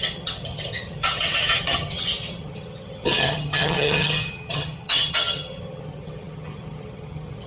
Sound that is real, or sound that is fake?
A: fake